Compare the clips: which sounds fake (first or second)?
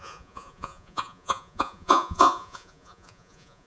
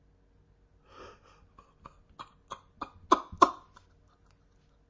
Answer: first